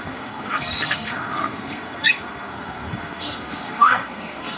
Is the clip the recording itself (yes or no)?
no